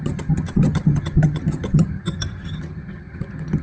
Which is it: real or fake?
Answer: fake